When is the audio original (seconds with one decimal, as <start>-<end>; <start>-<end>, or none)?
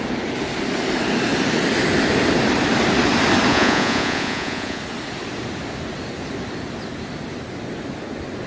0.0-3.5; 4.8-8.5